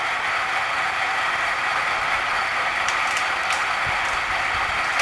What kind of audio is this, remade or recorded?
recorded